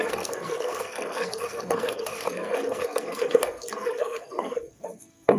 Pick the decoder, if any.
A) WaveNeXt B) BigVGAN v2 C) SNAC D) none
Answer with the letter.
C